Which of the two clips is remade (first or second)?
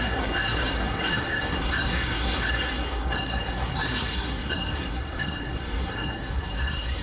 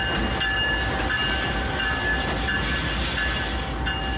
first